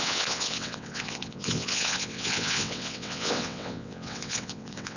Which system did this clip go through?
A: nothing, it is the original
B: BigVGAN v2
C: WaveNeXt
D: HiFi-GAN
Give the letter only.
C